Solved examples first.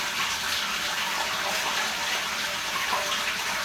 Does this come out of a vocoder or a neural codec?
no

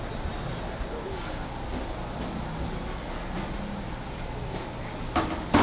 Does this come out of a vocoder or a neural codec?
no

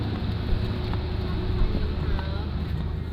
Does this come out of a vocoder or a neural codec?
no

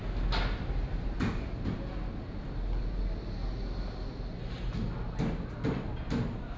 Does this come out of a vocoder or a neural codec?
no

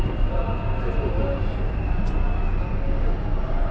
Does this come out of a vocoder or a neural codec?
no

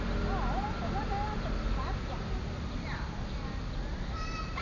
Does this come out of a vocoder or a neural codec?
no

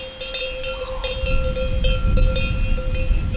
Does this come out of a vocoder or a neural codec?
no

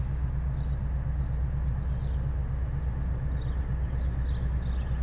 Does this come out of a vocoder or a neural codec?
no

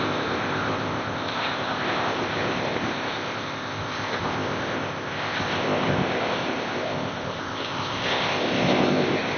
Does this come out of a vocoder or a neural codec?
yes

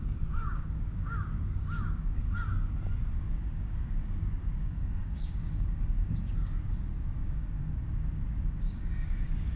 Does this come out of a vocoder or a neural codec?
yes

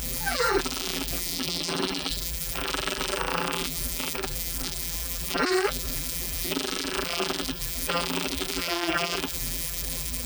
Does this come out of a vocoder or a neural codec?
yes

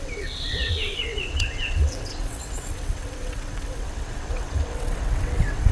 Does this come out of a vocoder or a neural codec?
yes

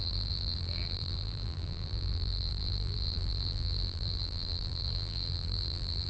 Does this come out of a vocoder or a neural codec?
yes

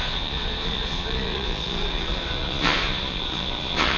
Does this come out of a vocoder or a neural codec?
yes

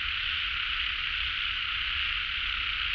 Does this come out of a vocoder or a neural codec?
no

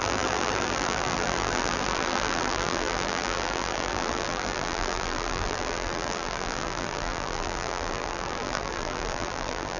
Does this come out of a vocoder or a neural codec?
yes